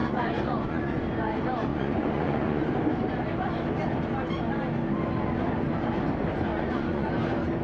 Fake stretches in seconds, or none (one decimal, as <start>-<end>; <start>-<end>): 0.0-1.0; 1.7-2.7; 6.5-7.1